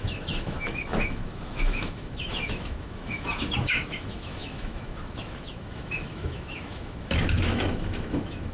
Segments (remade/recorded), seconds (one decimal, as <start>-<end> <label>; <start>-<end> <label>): 0.0-8.5 remade